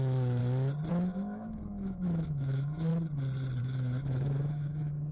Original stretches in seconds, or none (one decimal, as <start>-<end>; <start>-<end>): 0.4-0.9; 2.9-3.6